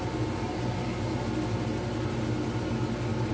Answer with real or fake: real